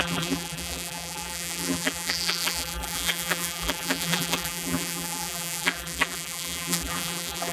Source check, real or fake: fake